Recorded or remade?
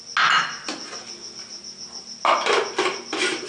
recorded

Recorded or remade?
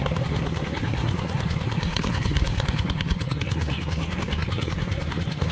remade